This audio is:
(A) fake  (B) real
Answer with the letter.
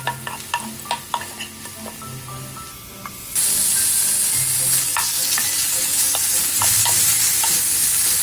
B